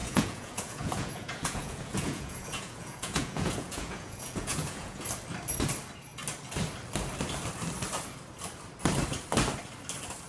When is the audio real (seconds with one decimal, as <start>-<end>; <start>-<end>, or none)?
5.0-10.3